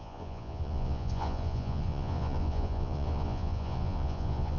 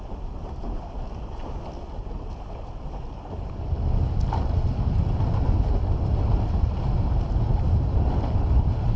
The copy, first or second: first